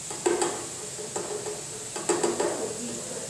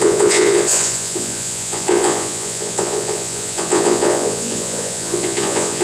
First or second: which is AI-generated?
second